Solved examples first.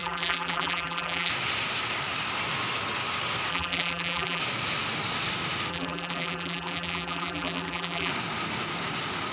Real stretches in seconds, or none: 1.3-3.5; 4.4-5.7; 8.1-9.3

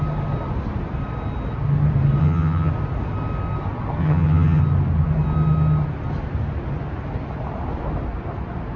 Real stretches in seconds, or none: 0.0-2.2; 2.7-4.0; 4.6-8.8

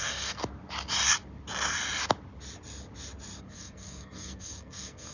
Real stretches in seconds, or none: 0.4-3.4